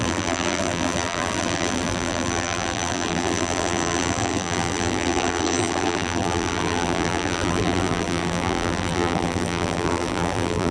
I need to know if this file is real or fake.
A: fake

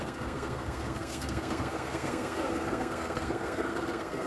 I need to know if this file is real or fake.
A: fake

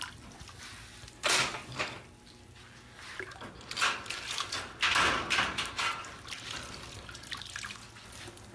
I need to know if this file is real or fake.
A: real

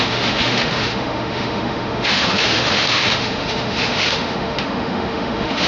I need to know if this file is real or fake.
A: fake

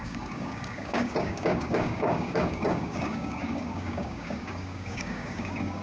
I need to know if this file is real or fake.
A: fake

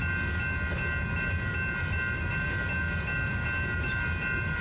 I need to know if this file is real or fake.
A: real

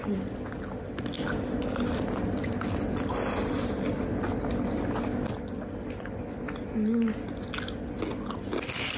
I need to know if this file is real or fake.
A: real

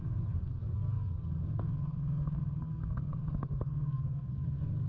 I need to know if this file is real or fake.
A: fake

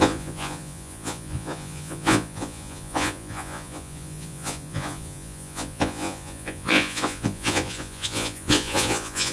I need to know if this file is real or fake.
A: fake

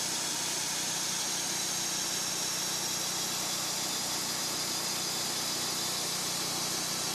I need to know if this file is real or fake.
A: real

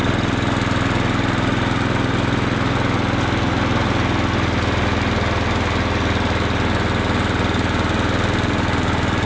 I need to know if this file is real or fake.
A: real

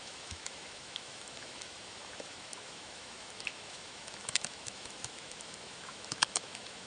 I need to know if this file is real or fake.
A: fake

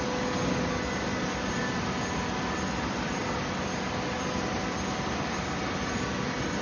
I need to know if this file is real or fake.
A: real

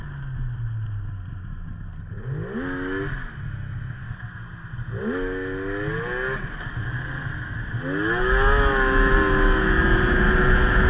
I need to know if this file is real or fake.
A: real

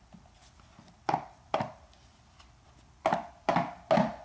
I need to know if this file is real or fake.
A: real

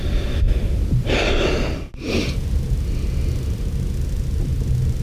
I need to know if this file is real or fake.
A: real